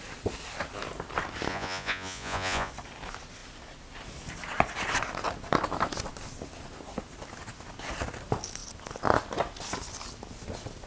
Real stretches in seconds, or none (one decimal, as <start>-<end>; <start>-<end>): 0.0-1.5; 2.7-10.9